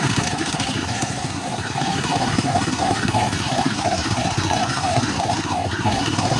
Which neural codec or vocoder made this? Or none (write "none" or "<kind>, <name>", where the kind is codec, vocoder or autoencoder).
codec, SNAC